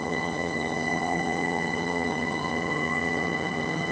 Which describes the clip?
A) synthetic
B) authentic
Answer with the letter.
A